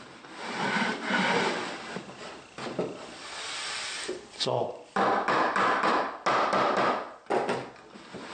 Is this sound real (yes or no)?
yes